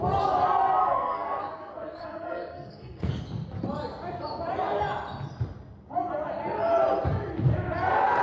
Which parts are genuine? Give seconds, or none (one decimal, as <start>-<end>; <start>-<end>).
0.0-0.8; 3.2-8.2